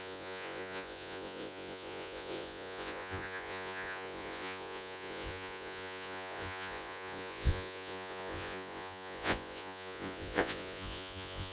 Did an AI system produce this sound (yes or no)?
yes